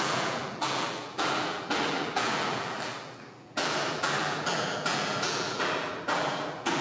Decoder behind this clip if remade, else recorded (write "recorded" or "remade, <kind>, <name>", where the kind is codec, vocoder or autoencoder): remade, vocoder, BigVGAN v2